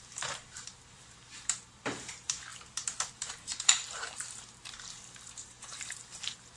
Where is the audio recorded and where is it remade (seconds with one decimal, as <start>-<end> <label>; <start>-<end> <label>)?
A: 0.0-2.5 remade; 2.5-3.2 recorded; 3.2-6.6 remade